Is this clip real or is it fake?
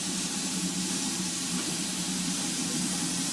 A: fake